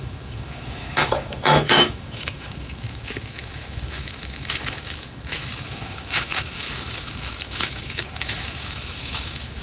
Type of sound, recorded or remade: remade